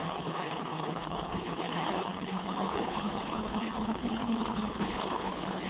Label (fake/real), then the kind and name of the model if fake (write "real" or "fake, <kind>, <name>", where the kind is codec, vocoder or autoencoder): fake, codec, HILCodec